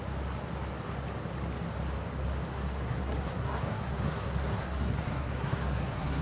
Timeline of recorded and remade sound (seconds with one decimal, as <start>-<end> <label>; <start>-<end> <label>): 0.0-2.5 recorded; 2.5-6.2 remade